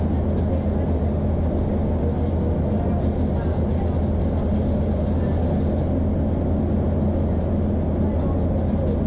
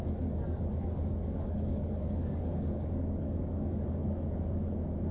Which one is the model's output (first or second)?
second